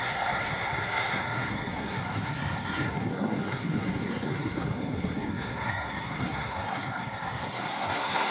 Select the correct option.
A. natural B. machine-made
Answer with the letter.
B